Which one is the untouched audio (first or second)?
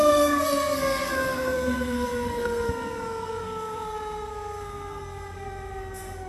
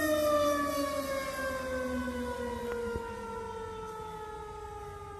second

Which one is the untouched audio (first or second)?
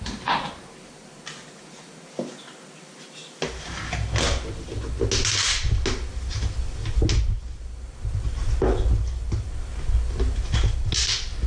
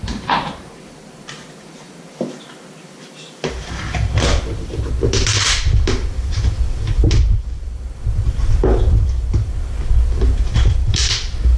first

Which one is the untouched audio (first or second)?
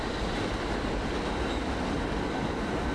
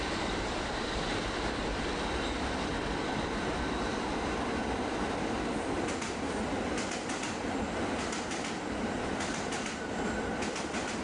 first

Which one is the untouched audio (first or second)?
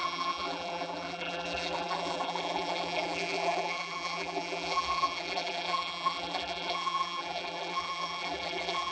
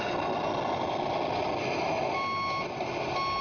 second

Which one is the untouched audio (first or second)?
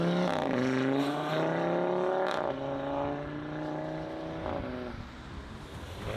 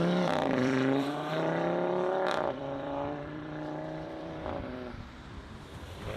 first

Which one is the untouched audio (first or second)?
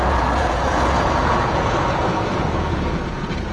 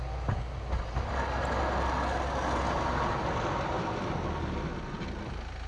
second